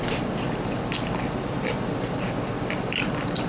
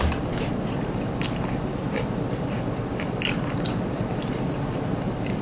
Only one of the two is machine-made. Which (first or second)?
second